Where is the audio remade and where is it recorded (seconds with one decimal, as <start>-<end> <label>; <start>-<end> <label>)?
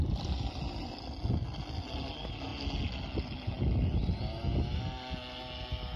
0.0-6.0 recorded